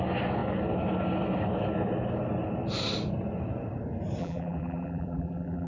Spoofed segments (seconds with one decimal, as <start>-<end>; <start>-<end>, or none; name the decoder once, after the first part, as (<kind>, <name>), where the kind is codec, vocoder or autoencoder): 4.2-5.7 (vocoder, BigVGAN v2)